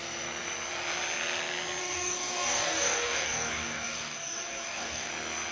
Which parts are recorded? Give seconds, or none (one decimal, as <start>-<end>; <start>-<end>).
0.0-1.8; 5.1-5.5